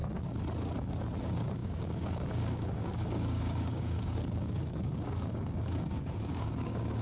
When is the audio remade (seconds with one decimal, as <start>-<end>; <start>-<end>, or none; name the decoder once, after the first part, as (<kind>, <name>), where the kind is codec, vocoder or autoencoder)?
1.2-7.0 (codec, DAC)